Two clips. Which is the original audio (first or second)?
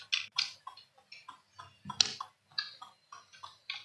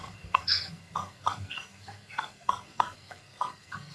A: first